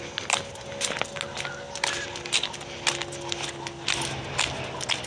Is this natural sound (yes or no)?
yes